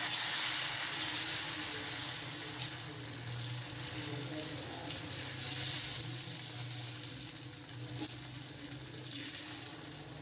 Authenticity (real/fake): real